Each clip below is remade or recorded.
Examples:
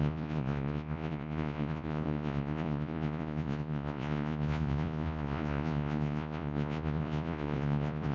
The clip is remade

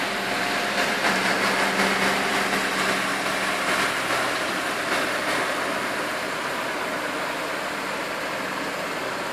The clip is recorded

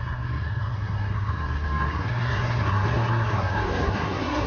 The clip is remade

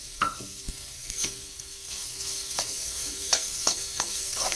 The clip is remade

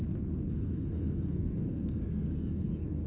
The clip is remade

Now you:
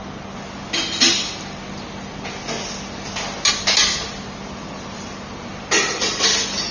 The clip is recorded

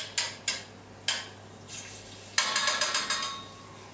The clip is recorded